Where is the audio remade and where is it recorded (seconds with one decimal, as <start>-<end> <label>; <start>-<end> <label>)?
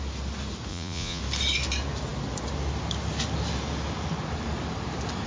0.0-0.7 recorded; 0.7-1.2 remade; 1.2-5.3 recorded